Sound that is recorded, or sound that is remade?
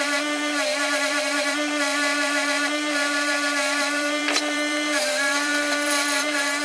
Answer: remade